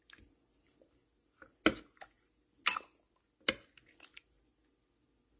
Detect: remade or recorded recorded